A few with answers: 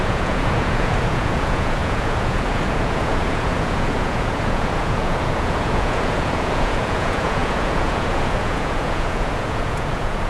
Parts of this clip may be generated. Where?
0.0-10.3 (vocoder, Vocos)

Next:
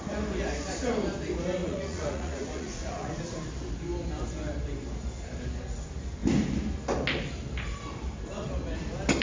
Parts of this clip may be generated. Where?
1.6-3.2 (vocoder, Vocos)

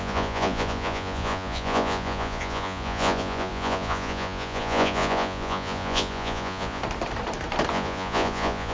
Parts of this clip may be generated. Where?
0.0-6.8 (vocoder, Vocos); 7.7-8.7

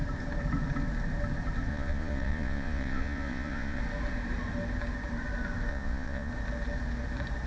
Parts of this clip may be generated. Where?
1.7-3.8 (vocoder, Vocos); 5.7-6.3

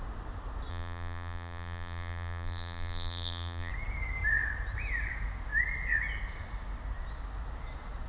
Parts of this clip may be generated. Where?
0.7-3.7 (vocoder, BigVGAN v2)

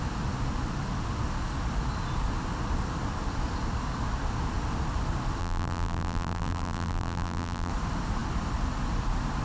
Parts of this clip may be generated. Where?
5.4-7.7 (vocoder, BigVGAN v2)